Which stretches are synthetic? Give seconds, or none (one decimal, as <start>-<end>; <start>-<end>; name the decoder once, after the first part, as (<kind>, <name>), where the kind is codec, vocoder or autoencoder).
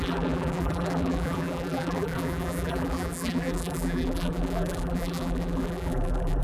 0.0-6.4 (vocoder, BigVGAN v2)